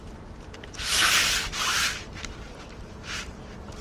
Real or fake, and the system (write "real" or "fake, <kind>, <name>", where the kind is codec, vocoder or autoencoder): fake, vocoder, BigVGAN v2